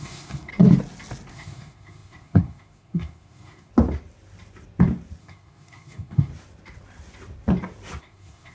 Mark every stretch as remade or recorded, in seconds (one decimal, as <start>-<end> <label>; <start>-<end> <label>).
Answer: 0.0-0.5 remade; 0.5-1.3 recorded; 1.3-3.7 remade; 3.7-5.2 recorded; 5.2-6.3 remade; 6.3-8.0 recorded; 8.0-8.5 remade